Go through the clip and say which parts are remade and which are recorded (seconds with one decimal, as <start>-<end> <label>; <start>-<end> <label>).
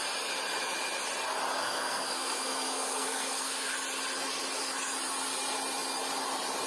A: 0.0-1.6 recorded; 1.6-3.7 remade; 3.7-6.7 recorded